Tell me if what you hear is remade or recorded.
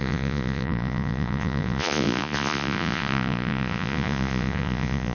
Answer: remade